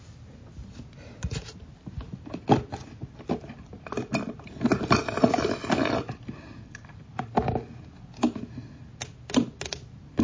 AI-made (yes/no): no